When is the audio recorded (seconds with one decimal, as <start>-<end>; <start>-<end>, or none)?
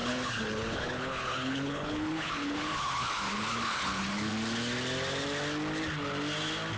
4.3-6.8